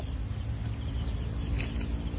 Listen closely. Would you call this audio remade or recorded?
recorded